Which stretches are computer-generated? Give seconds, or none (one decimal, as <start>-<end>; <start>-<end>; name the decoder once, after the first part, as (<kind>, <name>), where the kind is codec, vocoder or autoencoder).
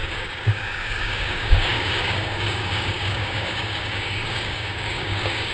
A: 0.0-5.5 (codec, DAC)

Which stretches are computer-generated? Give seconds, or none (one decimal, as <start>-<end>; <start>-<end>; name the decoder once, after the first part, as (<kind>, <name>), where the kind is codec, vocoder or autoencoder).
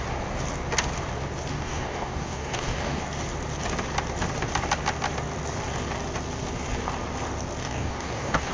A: 1.5-3.0 (codec, DAC); 7.6-8.5